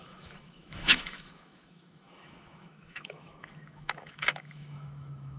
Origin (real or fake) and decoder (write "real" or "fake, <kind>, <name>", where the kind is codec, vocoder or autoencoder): fake, autoencoder, DAC-VAE